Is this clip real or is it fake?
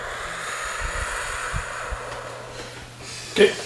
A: real